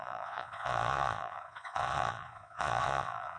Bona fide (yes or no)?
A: no